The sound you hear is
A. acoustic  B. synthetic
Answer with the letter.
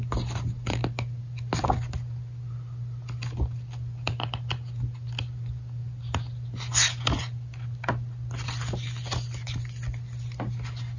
A